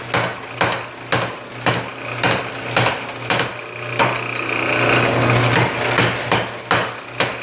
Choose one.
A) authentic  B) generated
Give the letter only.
A